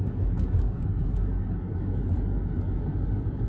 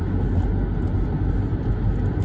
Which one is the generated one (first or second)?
first